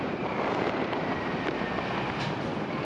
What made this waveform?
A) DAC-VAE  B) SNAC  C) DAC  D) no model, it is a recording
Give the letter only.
D